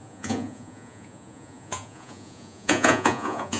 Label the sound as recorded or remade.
remade